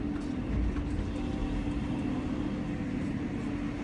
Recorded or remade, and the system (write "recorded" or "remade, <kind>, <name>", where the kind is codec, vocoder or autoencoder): recorded